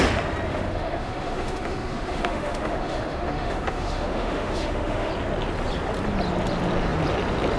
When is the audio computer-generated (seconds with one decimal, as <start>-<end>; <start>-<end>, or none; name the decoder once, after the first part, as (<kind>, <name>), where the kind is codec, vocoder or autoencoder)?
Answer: 0.5-5.1 (autoencoder, DAC-VAE)